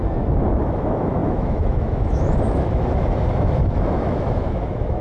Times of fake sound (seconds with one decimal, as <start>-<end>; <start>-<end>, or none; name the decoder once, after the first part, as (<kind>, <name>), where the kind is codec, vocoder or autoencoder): 0.6-5.0 (autoencoder, DAC-VAE)

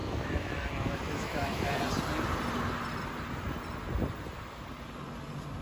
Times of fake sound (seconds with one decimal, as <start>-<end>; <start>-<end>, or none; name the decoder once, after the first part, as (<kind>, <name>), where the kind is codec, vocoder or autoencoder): 0.0-1.6 (autoencoder, DAC-VAE)

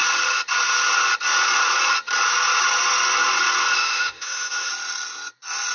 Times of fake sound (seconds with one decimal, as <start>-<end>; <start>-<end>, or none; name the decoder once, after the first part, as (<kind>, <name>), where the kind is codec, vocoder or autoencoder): 3.8-4.7 (autoencoder, DAC-VAE)

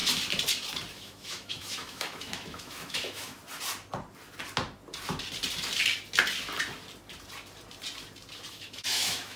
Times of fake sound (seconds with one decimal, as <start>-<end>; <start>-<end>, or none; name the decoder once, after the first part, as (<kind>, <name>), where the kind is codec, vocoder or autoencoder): 0.9-3.4 (autoencoder, DAC-VAE); 8.5-9.4